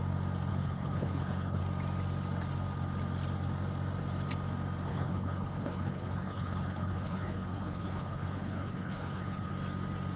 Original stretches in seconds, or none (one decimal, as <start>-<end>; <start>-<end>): 0.0-0.5; 1.6-4.9; 9.5-10.2